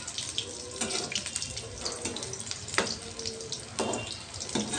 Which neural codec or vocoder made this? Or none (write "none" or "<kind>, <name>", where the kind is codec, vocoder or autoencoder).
none